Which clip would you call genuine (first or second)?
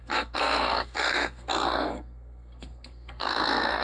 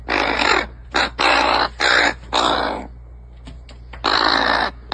second